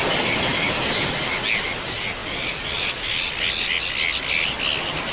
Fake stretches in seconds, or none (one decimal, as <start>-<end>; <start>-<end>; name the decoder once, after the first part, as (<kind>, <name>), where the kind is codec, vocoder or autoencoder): 0.5-1.1 (vocoder, BigVGAN v2)